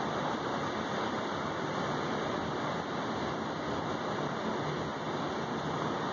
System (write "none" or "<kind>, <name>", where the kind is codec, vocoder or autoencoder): none